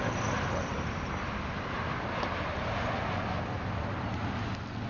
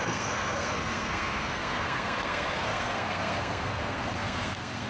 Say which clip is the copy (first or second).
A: second